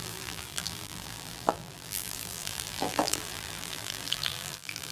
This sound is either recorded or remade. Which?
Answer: remade